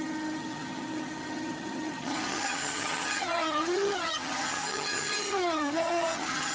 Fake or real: fake